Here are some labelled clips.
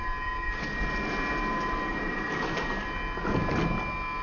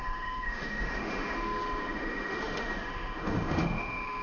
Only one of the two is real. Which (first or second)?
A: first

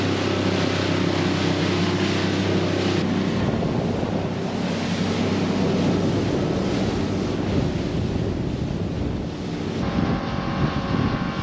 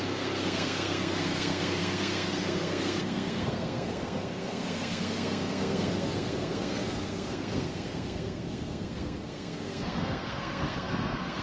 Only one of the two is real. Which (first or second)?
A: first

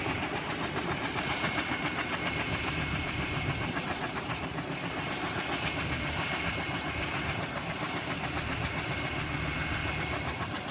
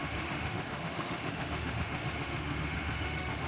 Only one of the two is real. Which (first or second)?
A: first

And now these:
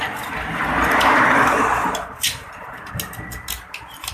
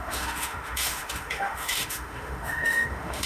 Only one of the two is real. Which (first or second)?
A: first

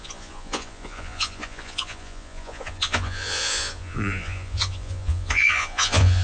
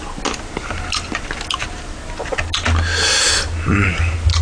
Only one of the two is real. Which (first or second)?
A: second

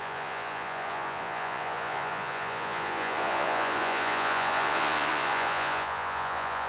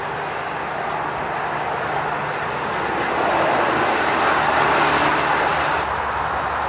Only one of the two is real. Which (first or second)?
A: second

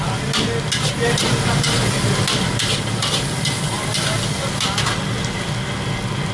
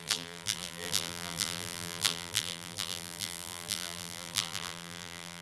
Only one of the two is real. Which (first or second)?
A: first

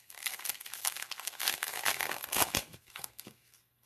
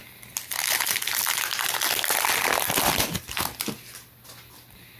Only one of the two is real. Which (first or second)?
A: second